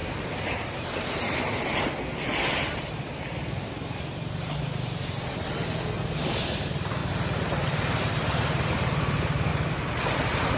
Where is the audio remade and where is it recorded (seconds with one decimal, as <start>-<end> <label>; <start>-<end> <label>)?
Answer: 0.0-2.3 remade; 2.3-6.2 recorded; 6.2-7.0 remade; 7.0-8.1 recorded; 8.1-9.5 remade; 9.5-10.6 recorded